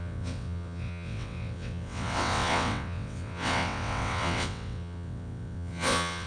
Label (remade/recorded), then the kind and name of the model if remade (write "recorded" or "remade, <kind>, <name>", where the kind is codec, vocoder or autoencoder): remade, vocoder, WaveNeXt